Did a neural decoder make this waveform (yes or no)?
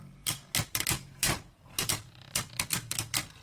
yes